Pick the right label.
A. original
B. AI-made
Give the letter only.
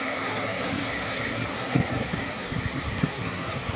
B